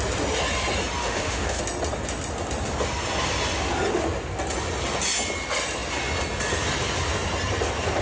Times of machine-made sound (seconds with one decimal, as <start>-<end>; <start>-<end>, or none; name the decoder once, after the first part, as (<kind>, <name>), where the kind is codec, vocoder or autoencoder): 1.0-1.6 (autoencoder, DAC-VAE)